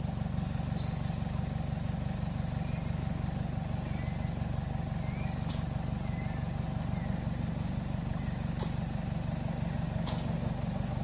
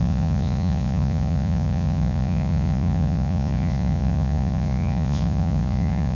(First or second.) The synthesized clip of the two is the second